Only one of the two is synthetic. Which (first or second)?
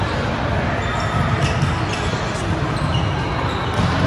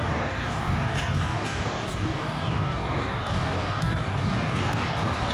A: second